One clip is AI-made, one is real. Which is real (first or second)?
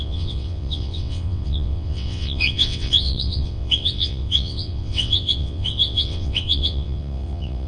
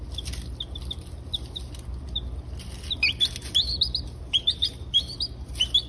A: second